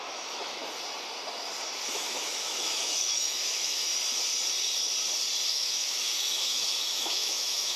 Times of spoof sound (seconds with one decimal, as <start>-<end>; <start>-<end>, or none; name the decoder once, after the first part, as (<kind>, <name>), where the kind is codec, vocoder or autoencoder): 0.0-0.6 (autoencoder, DAC-VAE); 1.9-3.9; 5.5-7.8